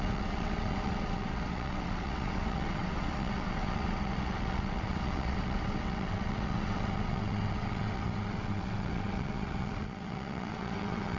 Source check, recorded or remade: remade